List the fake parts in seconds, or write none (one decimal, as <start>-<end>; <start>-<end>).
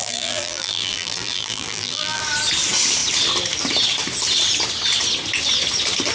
0.0-2.2